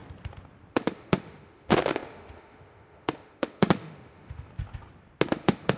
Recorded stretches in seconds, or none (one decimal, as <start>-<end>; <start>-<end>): 0.0-0.7; 4.5-5.3